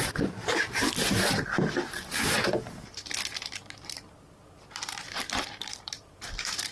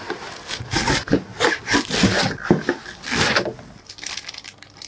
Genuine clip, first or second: second